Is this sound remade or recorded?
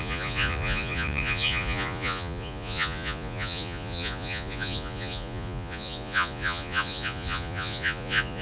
remade